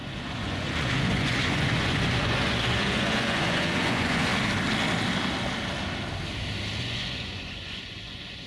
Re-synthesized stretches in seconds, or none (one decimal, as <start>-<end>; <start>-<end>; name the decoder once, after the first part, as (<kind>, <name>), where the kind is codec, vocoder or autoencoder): 0.0-4.3 (vocoder, Vocos); 6.8-8.5